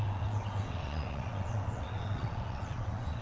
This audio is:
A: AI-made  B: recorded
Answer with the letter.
A